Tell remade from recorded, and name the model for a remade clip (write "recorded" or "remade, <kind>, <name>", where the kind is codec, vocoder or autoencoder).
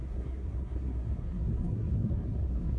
remade, codec, SNAC